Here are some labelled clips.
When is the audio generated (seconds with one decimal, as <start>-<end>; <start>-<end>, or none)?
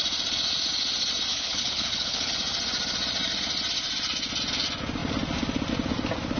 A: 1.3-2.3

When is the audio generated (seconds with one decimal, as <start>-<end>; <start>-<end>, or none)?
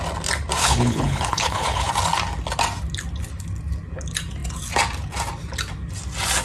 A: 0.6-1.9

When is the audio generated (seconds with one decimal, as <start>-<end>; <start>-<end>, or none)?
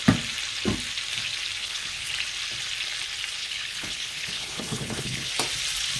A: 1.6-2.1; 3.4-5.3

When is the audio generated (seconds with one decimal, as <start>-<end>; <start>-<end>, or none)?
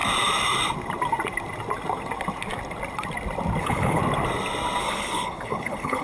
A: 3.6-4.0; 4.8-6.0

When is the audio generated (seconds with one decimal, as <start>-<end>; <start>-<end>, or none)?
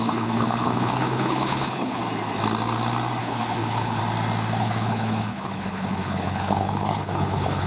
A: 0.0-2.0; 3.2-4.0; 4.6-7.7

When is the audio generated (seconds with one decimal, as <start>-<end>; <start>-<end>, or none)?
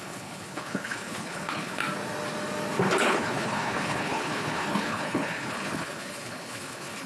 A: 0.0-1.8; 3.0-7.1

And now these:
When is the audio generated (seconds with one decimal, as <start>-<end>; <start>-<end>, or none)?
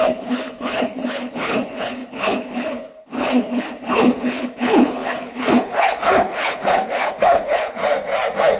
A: 0.0-7.8